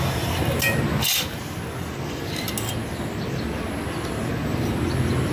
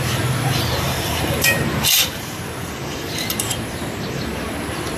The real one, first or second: first